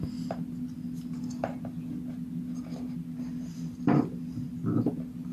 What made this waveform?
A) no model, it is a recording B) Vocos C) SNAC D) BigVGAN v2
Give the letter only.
A